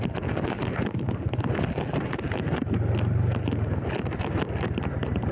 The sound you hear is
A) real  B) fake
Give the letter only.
A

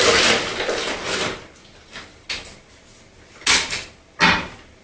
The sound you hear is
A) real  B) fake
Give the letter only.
A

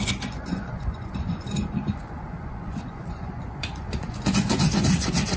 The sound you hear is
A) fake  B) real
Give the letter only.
A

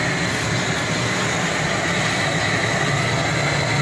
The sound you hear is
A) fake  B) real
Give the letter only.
B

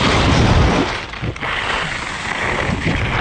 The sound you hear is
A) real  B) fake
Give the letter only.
A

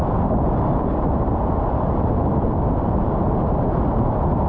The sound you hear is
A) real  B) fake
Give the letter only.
A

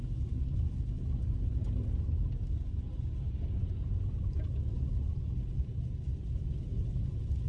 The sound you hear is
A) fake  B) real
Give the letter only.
B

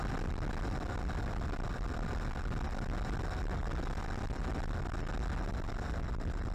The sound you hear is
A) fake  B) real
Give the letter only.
B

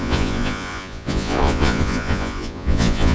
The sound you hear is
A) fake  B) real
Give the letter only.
A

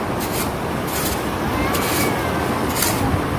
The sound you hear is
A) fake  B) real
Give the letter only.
B